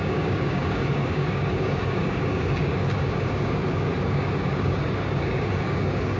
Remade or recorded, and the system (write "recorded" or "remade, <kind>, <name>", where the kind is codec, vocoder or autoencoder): remade, codec, DAC